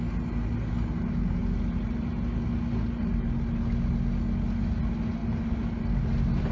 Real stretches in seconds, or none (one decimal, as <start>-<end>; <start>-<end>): 0.0-6.5